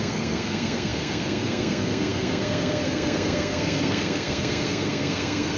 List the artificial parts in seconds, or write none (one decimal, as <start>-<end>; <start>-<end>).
0.0-5.6